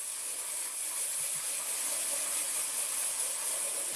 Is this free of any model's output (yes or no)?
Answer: yes